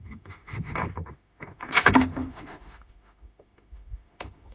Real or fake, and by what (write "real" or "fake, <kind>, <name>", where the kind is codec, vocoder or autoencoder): fake, autoencoder, DAC-VAE